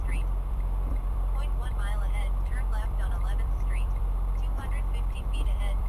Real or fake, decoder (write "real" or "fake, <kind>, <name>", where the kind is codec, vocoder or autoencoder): fake, vocoder, BigVGAN v2